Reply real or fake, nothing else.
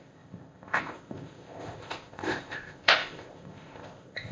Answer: fake